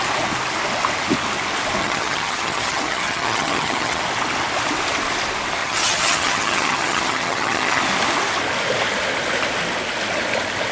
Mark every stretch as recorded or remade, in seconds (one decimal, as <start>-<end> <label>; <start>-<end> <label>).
0.0-1.8 recorded; 1.8-4.0 remade; 4.0-5.6 recorded; 5.6-7.8 remade; 7.8-10.7 recorded